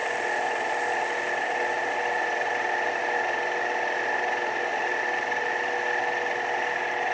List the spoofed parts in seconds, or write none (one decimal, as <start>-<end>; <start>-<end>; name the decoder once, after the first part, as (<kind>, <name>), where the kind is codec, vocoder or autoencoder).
0.0-3.0 (vocoder, BigVGAN v2)